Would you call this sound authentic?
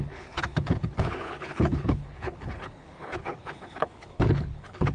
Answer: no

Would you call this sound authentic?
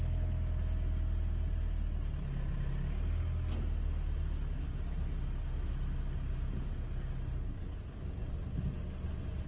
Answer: yes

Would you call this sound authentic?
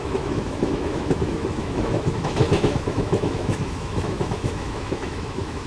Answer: no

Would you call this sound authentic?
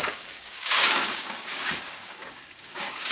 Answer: no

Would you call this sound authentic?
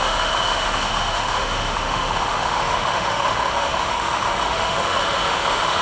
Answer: no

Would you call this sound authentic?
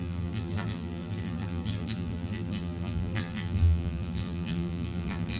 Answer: no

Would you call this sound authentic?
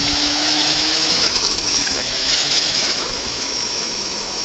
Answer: no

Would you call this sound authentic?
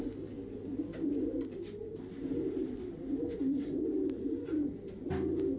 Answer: yes